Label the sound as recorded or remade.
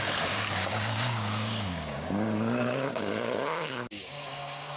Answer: remade